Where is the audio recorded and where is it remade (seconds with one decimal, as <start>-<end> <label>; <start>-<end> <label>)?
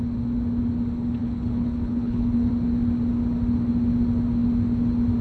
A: 0.0-1.2 recorded; 1.2-2.5 remade; 2.5-5.2 recorded